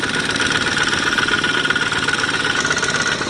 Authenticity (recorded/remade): recorded